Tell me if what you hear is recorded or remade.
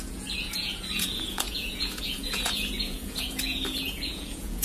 remade